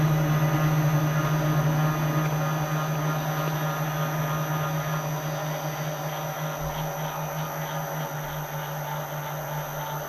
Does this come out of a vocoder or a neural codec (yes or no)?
no